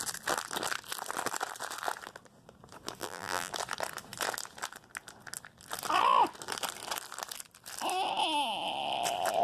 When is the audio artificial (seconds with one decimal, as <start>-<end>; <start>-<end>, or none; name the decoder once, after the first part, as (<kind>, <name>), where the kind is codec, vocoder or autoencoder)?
3.0-3.5 (vocoder, BigVGAN v2)